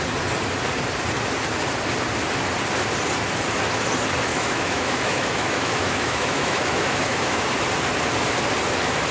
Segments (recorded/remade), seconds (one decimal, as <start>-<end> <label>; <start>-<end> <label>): 0.0-4.3 recorded; 4.3-7.5 remade; 7.5-9.1 recorded